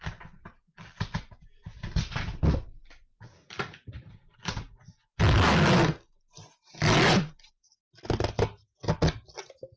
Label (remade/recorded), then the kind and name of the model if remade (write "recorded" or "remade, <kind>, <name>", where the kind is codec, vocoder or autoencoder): recorded